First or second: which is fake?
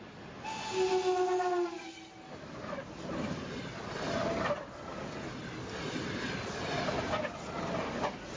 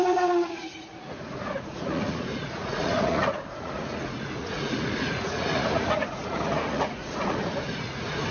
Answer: second